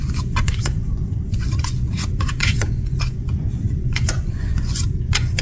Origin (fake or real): fake